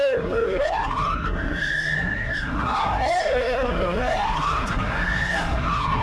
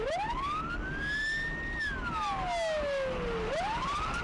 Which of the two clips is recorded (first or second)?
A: second